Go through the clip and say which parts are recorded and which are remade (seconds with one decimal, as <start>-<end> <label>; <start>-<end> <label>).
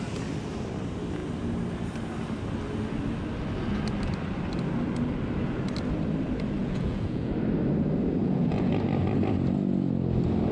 0.0-6.6 recorded; 6.6-7.3 remade; 7.3-8.2 recorded; 8.2-8.7 remade; 8.7-10.5 recorded